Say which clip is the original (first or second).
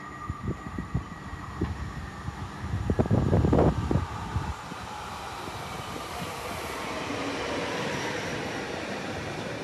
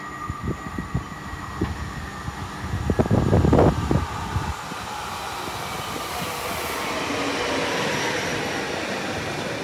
second